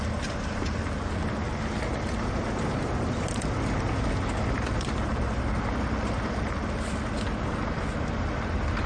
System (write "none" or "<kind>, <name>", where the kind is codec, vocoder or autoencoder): none